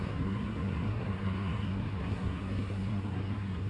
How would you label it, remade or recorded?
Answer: remade